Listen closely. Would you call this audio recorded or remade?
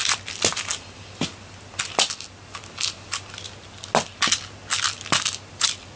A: recorded